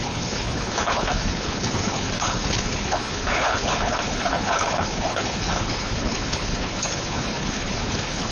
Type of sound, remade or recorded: remade